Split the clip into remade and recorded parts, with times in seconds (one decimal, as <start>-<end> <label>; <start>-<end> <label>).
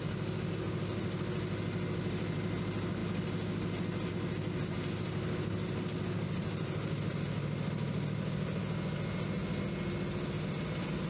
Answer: 0.0-11.1 recorded